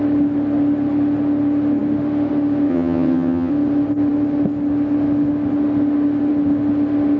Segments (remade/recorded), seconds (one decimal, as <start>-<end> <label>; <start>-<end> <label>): 0.0-2.7 recorded; 2.7-3.5 remade; 3.5-7.2 recorded